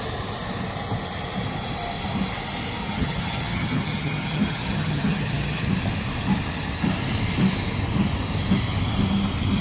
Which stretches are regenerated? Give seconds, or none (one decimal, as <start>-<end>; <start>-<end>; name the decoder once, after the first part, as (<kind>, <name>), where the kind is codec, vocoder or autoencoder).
2.8-5.7 (vocoder, HiFi-GAN)